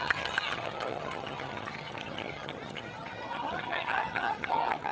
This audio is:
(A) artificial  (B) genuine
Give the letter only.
A